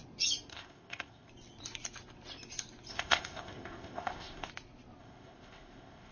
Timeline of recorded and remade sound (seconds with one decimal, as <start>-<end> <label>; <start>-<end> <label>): 0.0-0.5 recorded; 0.5-1.3 remade; 1.3-2.9 recorded; 2.9-4.5 remade; 4.5-5.0 recorded; 5.0-6.1 remade